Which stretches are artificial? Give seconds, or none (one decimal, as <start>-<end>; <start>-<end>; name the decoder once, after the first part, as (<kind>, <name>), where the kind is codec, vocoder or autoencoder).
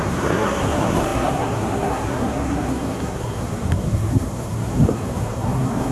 0.0-5.9 (codec, SNAC)